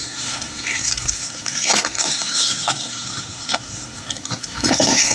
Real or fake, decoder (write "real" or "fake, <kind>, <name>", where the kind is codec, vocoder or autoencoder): fake, codec, SNAC